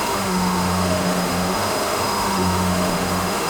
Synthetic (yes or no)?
yes